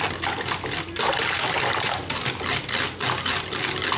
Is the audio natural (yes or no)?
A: yes